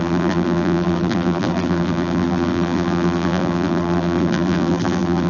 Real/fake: fake